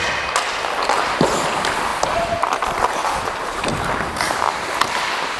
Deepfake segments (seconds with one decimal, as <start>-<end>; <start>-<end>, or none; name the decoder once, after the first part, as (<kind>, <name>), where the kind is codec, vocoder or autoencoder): none